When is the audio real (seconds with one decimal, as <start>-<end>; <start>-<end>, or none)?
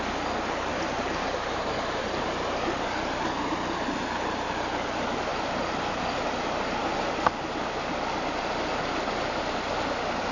0.0-0.7; 2.2-10.3